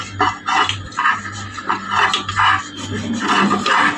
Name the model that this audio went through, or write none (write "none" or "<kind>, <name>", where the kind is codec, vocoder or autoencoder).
none